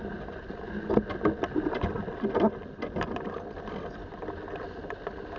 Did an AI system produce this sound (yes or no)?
no